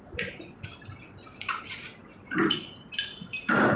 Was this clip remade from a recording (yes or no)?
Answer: no